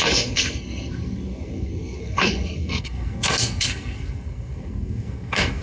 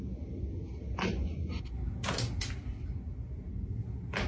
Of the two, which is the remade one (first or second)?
first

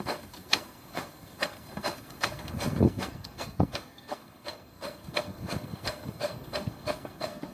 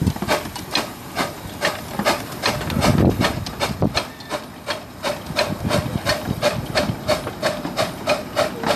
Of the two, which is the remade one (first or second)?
first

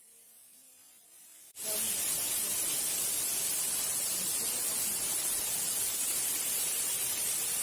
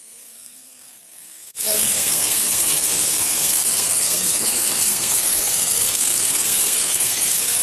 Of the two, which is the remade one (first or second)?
second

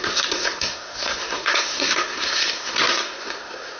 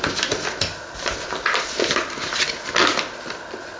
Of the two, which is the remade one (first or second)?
first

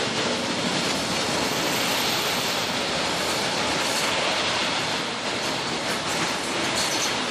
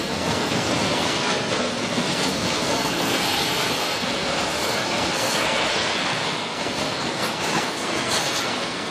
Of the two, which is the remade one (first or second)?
second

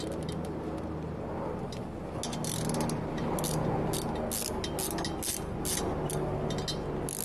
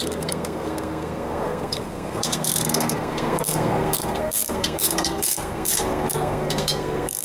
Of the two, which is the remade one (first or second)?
second